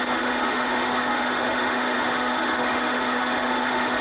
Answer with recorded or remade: remade